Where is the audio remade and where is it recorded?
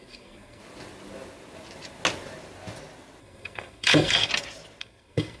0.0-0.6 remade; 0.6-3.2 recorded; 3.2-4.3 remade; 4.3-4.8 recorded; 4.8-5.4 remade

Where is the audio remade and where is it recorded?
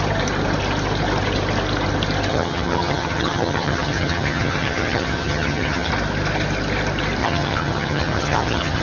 0.0-2.3 recorded; 2.3-5.9 remade; 5.9-7.2 recorded; 7.2-8.8 remade